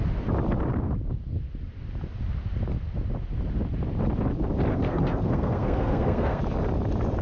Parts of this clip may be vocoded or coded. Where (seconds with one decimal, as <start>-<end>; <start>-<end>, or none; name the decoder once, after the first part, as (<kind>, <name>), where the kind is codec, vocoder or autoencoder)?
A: 4.7-6.4 (codec, SNAC)